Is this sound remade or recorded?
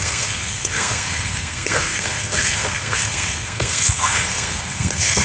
remade